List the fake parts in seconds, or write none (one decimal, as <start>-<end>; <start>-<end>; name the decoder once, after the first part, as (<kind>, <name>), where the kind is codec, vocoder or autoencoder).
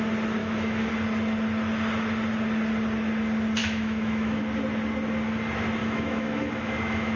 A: 0.4-0.9 (autoencoder, DAC-VAE); 3.6-4.4; 5.8-7.2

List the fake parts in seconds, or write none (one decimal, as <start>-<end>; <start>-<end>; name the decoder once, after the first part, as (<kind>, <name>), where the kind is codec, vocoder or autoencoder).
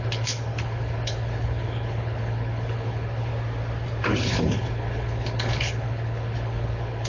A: 0.0-3.3 (codec, HILCodec); 4.0-7.1